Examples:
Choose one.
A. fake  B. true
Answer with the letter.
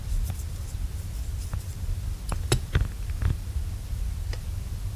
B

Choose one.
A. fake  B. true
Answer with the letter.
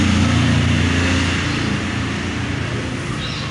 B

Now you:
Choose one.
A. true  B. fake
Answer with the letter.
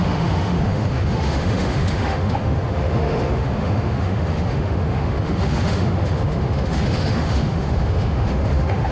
B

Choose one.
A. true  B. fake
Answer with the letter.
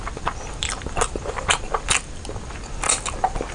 A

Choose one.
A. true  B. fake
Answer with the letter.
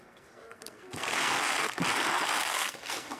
B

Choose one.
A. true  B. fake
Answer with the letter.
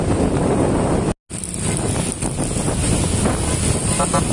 A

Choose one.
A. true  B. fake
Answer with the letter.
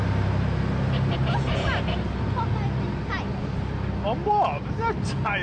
A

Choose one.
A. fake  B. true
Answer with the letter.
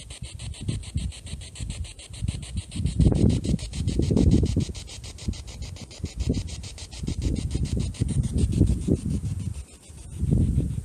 B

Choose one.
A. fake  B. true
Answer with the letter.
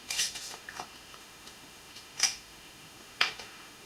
A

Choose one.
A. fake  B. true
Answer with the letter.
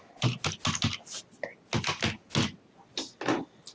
B